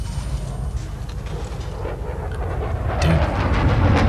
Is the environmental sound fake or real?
real